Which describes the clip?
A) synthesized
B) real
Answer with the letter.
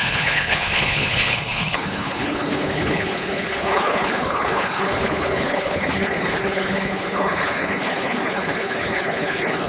A